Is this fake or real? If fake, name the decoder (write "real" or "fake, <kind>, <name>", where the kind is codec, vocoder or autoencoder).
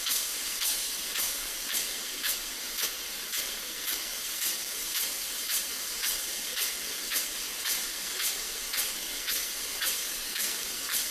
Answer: fake, codec, SNAC